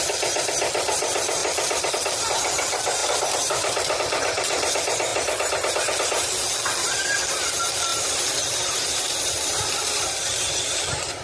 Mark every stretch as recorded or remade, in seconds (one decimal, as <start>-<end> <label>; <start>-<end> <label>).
0.0-3.0 recorded; 3.0-4.0 remade; 4.0-7.9 recorded; 7.9-10.5 remade; 10.5-11.2 recorded